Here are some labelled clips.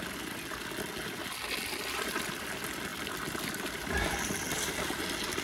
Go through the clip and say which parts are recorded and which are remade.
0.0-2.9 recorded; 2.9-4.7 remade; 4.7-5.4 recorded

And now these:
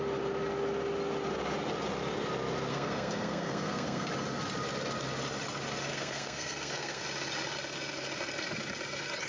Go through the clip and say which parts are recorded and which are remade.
0.0-2.7 recorded; 2.7-4.1 remade; 4.1-5.9 recorded; 5.9-7.0 remade; 7.0-9.3 recorded

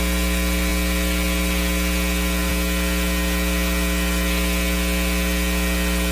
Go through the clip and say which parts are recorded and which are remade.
0.0-6.1 recorded

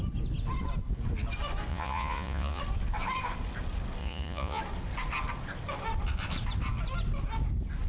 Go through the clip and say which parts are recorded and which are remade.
0.0-1.7 recorded; 1.7-2.6 remade; 2.6-4.0 recorded; 4.0-4.6 remade; 4.6-7.9 recorded

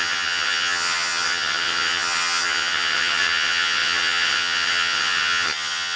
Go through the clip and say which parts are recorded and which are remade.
0.0-6.0 remade